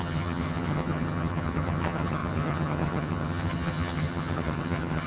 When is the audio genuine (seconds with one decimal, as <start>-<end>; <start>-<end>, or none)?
none